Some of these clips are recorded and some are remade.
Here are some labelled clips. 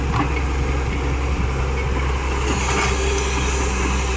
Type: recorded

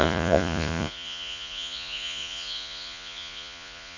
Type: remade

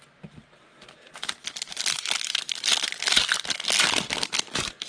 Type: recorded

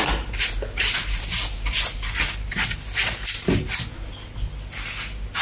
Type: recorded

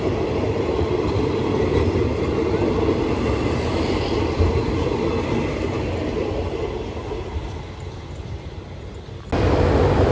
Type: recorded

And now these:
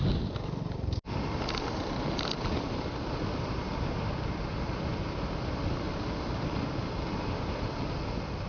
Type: recorded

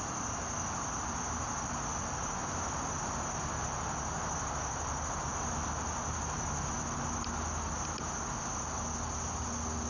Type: recorded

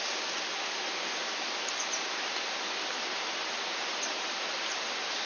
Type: recorded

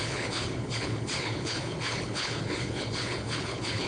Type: remade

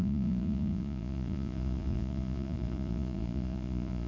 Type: remade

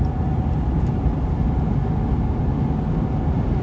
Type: recorded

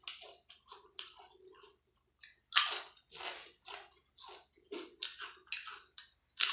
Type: recorded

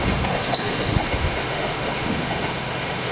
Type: remade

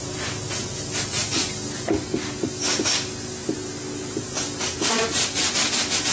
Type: recorded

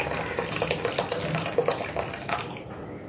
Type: recorded